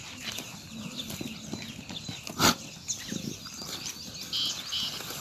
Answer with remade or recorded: recorded